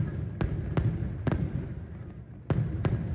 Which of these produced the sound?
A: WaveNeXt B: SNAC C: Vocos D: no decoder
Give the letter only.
D